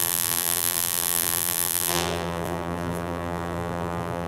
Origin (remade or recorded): remade